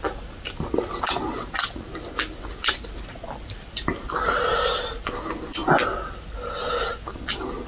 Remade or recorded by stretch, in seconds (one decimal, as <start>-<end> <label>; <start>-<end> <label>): 0.0-7.7 recorded